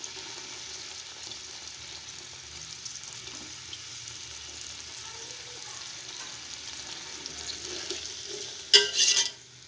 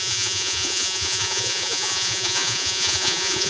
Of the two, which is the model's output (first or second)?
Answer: second